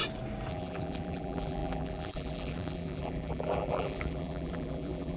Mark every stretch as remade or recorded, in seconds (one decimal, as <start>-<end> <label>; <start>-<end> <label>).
0.0-0.5 recorded; 0.5-5.2 remade